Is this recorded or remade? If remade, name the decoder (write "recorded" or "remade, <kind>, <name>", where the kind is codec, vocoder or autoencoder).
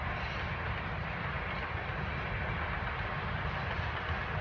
recorded